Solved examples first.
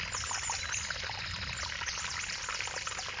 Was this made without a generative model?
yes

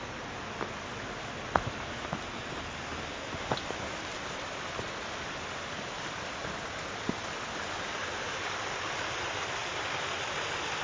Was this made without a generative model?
yes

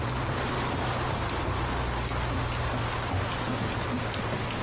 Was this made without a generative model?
yes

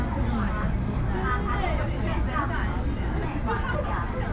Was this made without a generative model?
yes